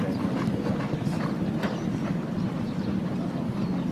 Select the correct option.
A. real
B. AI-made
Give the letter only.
A